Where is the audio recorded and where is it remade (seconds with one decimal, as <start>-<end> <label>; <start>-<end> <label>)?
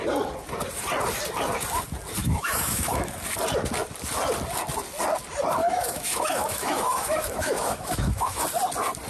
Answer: 0.0-2.2 recorded; 2.2-3.1 remade; 3.1-5.6 recorded; 5.6-8.4 remade; 8.4-9.1 recorded